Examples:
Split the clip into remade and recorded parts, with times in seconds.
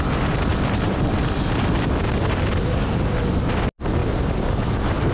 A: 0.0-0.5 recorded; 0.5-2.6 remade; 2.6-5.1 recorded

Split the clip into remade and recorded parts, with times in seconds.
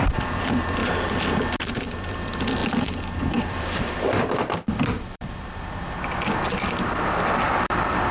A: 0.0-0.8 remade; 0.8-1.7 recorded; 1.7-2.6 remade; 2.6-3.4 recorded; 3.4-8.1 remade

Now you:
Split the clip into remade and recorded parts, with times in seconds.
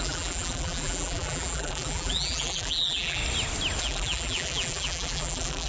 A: 0.0-3.2 remade; 3.2-3.8 recorded; 3.8-5.7 remade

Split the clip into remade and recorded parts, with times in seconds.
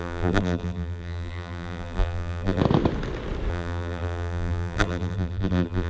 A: 0.0-2.6 remade; 2.6-3.5 recorded; 3.5-5.9 remade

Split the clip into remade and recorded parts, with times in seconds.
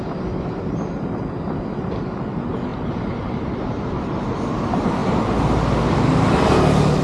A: 0.0-2.7 recorded; 2.7-4.6 remade; 4.6-7.0 recorded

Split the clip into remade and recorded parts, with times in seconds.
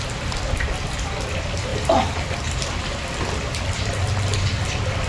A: 0.0-1.7 recorded; 1.7-5.1 remade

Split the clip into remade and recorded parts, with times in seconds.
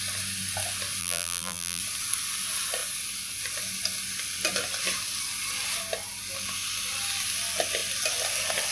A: 0.0-1.0 recorded; 1.0-1.8 remade; 1.8-8.7 recorded